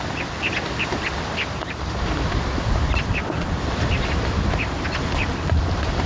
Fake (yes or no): yes